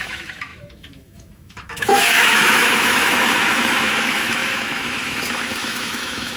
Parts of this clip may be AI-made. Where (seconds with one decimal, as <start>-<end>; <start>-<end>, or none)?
0.0-6.4